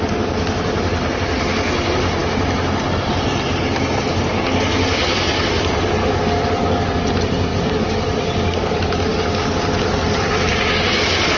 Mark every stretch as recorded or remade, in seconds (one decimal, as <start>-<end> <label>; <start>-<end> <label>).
0.0-4.9 recorded; 4.9-5.6 remade; 5.6-6.0 recorded; 6.0-6.9 remade; 6.9-7.5 recorded; 7.5-10.1 remade; 10.1-11.4 recorded